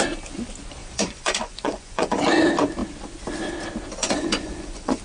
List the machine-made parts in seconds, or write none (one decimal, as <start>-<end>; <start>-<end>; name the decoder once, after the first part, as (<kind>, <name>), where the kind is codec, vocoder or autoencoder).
0.8-2.2 (vocoder, Vocos); 4.0-5.0